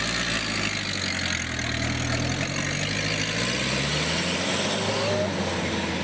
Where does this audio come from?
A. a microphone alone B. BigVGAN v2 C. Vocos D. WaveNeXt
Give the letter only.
A